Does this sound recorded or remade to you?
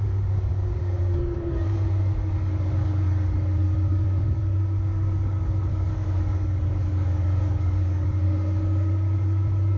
remade